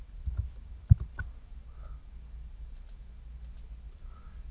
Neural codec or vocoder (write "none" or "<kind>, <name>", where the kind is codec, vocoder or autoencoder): none